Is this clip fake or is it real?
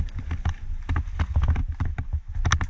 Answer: real